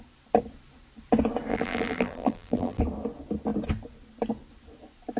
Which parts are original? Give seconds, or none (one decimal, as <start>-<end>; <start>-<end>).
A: 0.0-1.5; 2.8-5.2